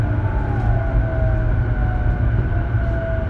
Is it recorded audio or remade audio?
recorded